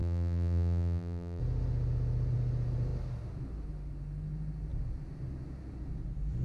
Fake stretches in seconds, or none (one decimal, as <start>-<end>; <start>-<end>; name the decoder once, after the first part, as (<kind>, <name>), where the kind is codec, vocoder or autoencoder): 0.0-1.4 (vocoder, BigVGAN v2)